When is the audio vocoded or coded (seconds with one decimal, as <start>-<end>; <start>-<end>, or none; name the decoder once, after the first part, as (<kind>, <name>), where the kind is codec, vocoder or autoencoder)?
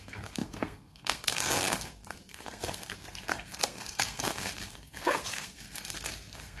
0.0-6.6 (codec, SNAC)